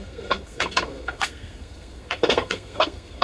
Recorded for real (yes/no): no